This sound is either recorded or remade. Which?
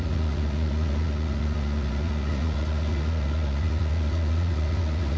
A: remade